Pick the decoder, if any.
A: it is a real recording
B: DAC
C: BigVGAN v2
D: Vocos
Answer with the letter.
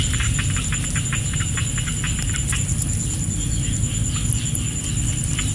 A